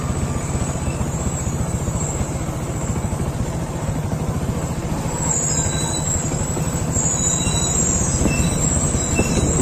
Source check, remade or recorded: recorded